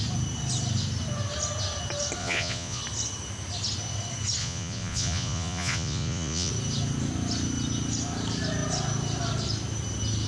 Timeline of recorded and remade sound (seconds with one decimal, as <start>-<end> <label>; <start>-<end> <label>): 0.0-2.2 recorded; 2.2-2.8 remade; 2.8-4.4 recorded; 4.4-6.5 remade; 6.5-10.3 recorded